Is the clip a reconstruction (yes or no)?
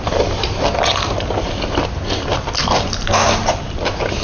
no